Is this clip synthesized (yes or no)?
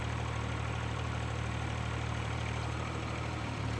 yes